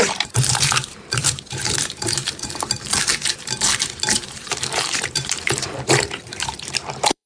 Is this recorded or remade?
remade